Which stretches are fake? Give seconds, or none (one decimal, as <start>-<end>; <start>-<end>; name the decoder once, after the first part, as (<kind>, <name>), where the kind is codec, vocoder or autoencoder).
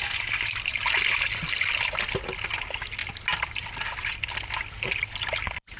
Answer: none